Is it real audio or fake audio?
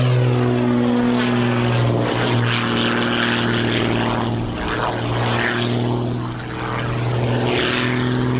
real